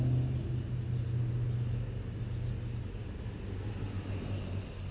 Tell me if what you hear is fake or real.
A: real